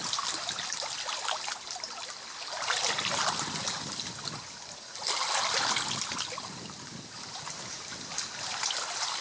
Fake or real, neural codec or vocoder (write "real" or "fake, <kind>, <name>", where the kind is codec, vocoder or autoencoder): real